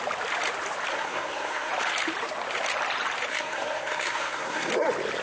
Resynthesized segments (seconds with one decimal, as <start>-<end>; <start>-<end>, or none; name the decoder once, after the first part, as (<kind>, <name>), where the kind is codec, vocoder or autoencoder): 0.9-1.7 (codec, SNAC); 3.3-4.7